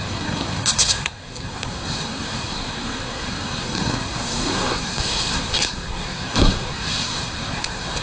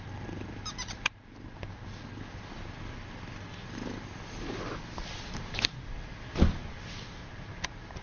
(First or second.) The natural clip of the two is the second